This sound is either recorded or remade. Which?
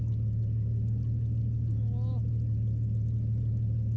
recorded